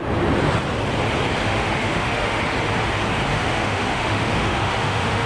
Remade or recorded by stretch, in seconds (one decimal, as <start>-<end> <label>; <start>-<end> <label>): 0.0-1.4 recorded; 1.4-2.4 remade; 2.4-3.3 recorded; 3.3-5.3 remade